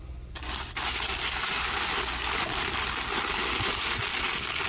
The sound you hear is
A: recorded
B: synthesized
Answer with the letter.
A